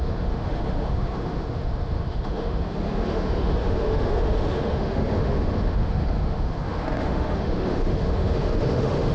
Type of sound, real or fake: fake